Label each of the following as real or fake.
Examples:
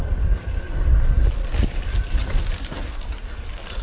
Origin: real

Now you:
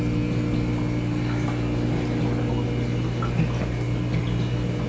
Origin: real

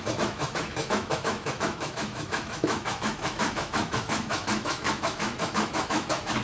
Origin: fake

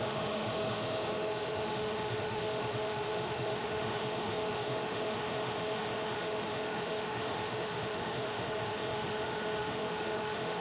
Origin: fake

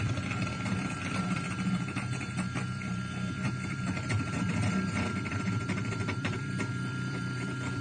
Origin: fake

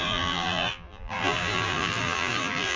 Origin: fake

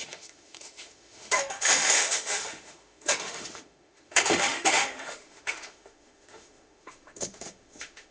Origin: fake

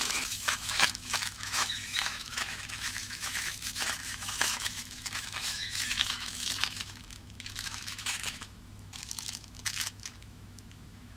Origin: fake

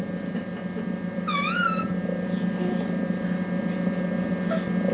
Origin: real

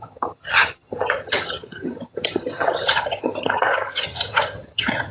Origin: fake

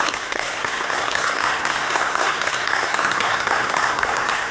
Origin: fake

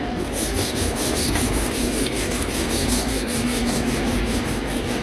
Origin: fake